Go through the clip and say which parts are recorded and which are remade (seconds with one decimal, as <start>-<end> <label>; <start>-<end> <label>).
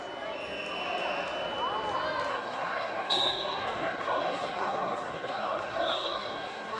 0.0-2.3 recorded; 2.3-6.8 remade